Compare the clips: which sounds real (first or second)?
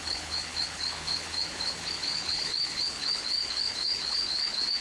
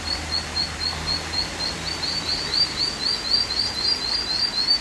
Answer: second